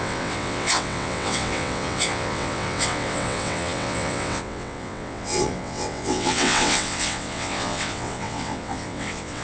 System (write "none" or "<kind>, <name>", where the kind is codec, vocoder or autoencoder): vocoder, WaveNeXt